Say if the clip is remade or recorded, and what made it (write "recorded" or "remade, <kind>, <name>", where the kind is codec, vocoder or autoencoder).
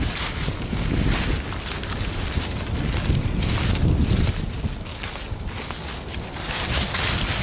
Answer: recorded